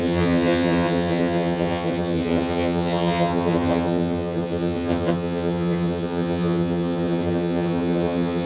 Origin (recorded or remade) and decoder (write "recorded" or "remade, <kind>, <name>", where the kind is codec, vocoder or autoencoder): remade, vocoder, HiFi-GAN